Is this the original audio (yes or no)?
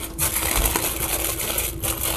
yes